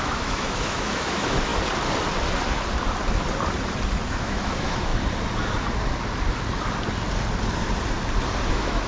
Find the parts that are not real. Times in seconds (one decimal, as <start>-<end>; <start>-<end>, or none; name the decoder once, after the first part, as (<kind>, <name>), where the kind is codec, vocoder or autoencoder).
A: 0.0-1.5 (autoencoder, DAC-VAE); 4.1-4.9; 8.5-8.9